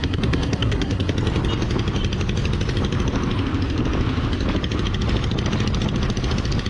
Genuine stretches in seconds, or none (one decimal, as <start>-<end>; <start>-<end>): 1.1-6.7